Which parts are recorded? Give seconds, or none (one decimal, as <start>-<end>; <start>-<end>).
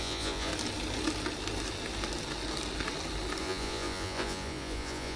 0.5-3.4